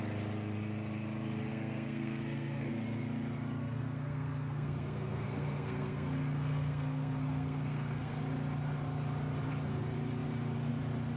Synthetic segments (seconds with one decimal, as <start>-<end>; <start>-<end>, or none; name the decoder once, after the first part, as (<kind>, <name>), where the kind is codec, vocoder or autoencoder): 1.5-2.7 (codec, SNAC); 3.6-8.2